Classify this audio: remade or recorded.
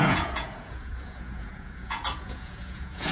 remade